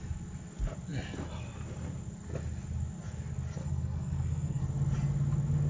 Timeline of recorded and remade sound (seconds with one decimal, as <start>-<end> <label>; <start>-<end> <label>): 0.0-3.6 recorded; 3.6-4.6 remade; 4.6-5.7 recorded